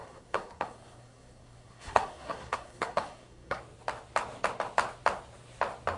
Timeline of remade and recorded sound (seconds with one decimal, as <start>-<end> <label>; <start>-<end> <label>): 0.0-3.6 remade; 3.6-6.0 recorded